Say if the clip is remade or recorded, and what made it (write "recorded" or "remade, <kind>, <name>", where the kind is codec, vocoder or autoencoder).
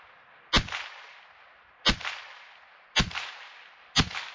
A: recorded